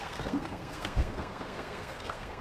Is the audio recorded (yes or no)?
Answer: no